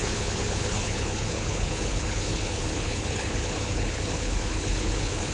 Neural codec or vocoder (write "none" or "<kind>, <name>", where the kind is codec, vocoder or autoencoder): codec, HILCodec